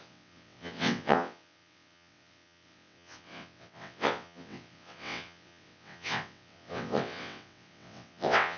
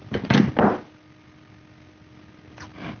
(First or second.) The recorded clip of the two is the second